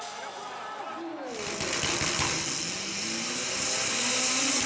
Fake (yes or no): no